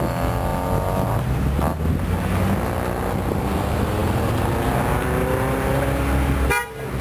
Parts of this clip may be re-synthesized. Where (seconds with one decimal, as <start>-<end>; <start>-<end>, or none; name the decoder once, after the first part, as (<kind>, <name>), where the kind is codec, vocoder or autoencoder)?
none